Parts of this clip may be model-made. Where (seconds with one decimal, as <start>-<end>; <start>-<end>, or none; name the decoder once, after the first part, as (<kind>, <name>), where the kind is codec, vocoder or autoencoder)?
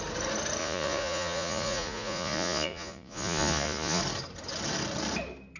0.6-4.0 (vocoder, Vocos)